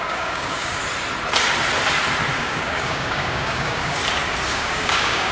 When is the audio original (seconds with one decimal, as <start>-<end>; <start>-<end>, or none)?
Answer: 0.8-2.3; 4.0-4.5